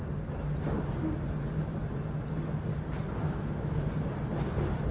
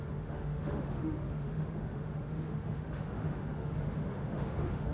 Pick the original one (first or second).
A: first